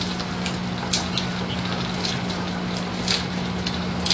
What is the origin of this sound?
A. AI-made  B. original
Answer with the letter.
B